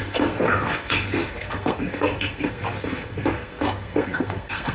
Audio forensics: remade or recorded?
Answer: remade